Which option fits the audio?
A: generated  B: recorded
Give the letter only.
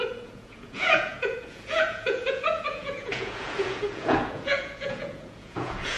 A